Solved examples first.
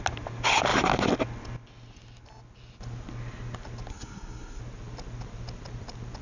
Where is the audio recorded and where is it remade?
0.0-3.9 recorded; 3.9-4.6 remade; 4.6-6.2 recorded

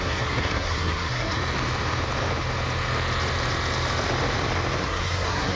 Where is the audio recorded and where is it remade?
0.0-1.4 remade; 1.4-4.8 recorded; 4.8-5.6 remade